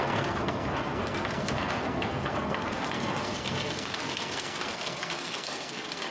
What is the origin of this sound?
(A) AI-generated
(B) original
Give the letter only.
A